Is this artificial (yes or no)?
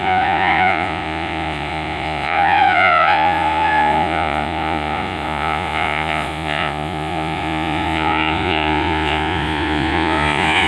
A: yes